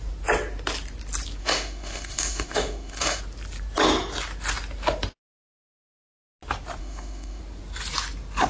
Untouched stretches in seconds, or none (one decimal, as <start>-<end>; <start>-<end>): 0.0-1.4; 3.2-6.8; 7.4-8.5